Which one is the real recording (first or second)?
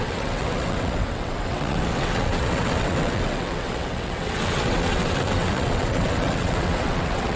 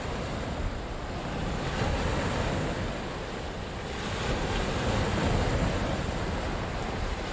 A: second